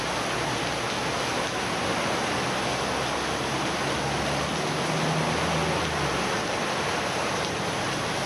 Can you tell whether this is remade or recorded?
recorded